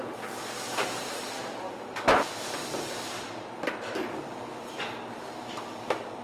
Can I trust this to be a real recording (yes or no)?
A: yes